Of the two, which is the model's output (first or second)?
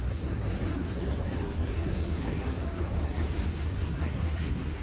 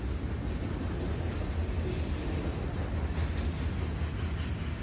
first